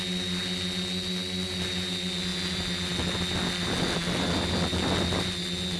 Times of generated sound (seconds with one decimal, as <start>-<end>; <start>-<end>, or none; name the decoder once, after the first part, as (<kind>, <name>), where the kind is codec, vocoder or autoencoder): none